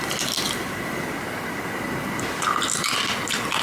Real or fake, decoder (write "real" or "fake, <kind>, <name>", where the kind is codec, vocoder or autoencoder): real